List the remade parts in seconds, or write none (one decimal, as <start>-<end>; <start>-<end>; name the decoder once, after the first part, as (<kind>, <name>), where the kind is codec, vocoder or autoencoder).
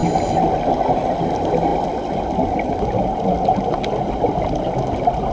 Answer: none